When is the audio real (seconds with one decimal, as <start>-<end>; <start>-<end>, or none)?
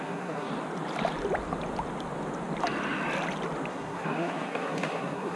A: 0.5-3.7